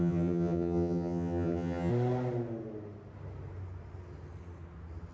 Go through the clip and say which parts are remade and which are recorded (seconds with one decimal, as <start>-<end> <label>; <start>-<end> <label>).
0.0-1.9 remade; 1.9-5.1 recorded